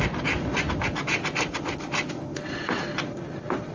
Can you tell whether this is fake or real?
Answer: real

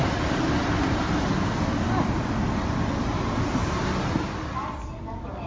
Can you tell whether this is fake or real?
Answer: real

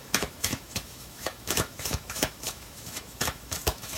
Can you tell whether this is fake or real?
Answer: fake